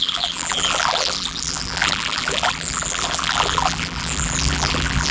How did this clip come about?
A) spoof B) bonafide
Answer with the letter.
A